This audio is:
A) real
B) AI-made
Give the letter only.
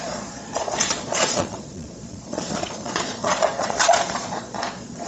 B